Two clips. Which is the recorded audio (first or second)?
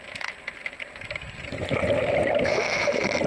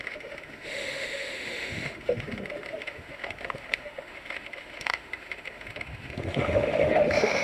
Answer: first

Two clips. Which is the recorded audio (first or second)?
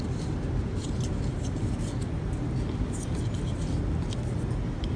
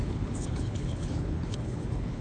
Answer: first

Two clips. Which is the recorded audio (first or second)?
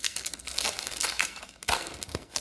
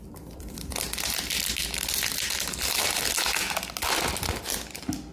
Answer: second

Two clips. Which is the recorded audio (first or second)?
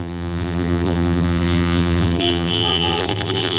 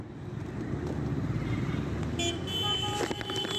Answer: second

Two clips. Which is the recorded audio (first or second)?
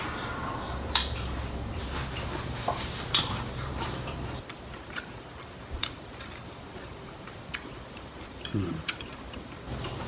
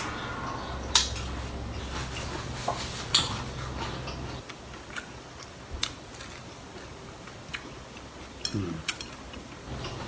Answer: second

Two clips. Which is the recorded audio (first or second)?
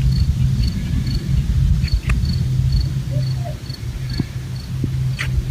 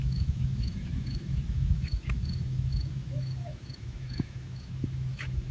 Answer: first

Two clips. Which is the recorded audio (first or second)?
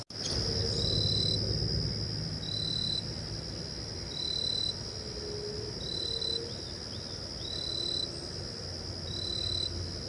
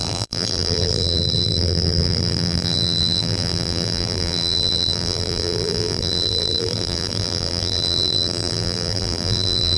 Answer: first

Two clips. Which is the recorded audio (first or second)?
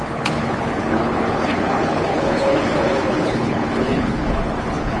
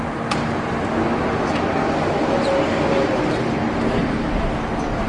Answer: second